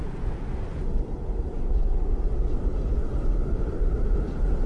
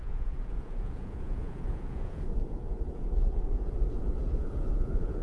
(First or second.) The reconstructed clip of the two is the second